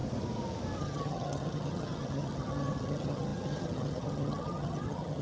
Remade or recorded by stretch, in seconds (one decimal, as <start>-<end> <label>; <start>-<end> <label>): 0.0-0.8 recorded; 0.8-5.2 remade